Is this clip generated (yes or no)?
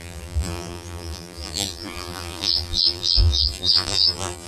yes